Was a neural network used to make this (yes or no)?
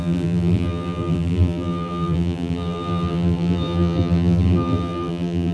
yes